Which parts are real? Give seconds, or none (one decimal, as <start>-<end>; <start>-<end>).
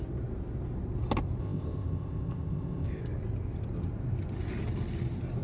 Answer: 0.0-1.4; 3.0-5.4